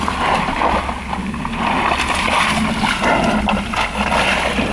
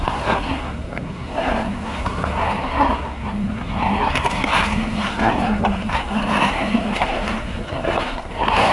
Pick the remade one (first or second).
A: second